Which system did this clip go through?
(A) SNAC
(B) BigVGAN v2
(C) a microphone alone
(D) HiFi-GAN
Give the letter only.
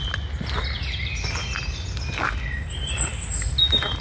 C